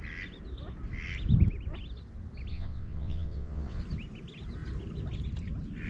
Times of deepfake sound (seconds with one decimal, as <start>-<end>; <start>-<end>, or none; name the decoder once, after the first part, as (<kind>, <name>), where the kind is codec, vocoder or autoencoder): 2.5-3.8 (vocoder, WaveNeXt)

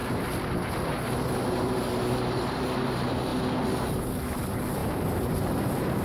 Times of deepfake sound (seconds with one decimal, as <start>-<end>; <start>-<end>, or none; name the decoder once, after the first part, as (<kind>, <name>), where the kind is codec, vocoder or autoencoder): 1.5-3.3 (vocoder, BigVGAN v2); 4.1-6.0

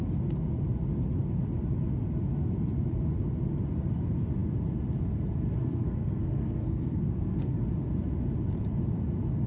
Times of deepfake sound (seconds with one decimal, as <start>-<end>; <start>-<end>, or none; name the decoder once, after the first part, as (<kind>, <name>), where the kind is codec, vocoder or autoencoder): 5.6-7.6 (codec, SNAC)

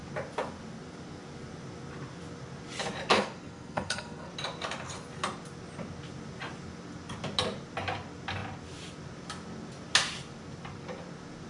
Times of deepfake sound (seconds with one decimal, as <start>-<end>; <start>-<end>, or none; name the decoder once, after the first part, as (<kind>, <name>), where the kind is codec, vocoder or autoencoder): 3.1-4.3 (codec, SNAC)

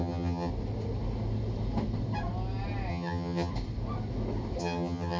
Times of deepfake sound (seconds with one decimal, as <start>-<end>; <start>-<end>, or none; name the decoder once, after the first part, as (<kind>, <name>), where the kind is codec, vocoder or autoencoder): 0.0-0.5 (vocoder, HiFi-GAN); 2.9-3.5; 4.6-5.2